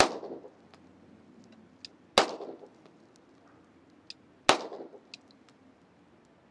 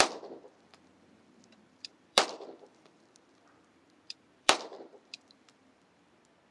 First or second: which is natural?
first